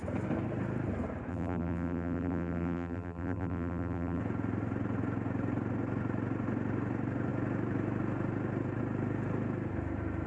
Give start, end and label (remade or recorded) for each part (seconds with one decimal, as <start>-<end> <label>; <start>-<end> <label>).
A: 0.0-1.3 recorded; 1.3-4.2 remade; 4.2-10.3 recorded